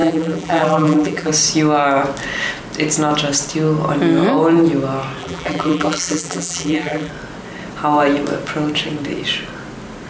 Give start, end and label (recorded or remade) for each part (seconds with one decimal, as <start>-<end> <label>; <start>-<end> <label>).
0.0-1.3 remade; 1.3-5.2 recorded; 5.2-7.1 remade; 7.1-10.1 recorded